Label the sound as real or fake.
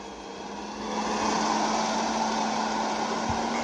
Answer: real